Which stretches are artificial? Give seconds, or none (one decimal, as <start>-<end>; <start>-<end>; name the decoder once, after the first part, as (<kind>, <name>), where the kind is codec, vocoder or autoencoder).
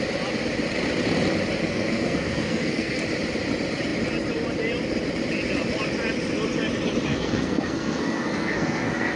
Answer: 1.6-3.0 (codec, SNAC); 7.1-9.2